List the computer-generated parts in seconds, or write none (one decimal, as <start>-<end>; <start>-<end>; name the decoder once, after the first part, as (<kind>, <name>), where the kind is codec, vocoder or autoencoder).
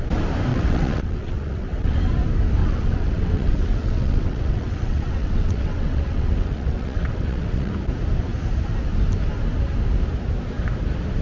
0.5-2.1 (vocoder, WaveNeXt); 2.6-7.7